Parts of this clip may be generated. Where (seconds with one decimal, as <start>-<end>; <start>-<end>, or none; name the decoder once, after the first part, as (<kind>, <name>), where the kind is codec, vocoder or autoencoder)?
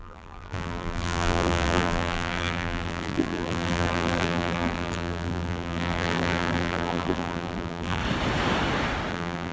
0.0-8.0 (vocoder, BigVGAN v2); 9.1-9.5